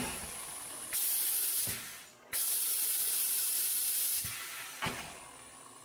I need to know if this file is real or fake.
real